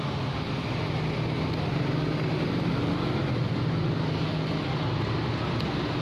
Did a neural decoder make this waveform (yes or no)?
no